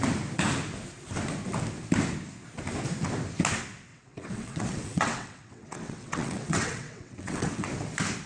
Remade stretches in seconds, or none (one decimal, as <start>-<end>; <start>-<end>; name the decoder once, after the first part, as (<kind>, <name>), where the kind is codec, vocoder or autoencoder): 3.9-7.7 (vocoder, WaveNeXt)